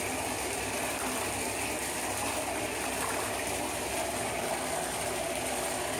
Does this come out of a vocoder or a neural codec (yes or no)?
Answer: yes